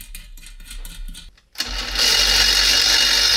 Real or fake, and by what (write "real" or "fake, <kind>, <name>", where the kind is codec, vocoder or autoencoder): real